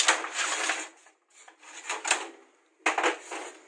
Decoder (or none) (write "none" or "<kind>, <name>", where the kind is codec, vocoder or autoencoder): none